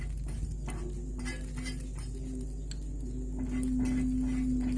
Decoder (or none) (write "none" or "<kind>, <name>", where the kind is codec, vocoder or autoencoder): none